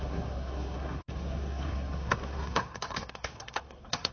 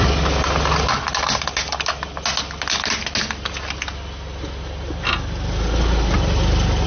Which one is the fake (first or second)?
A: first